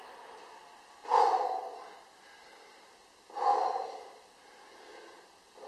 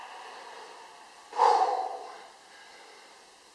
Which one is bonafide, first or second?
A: first